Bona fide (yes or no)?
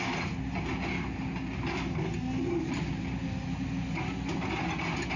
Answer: yes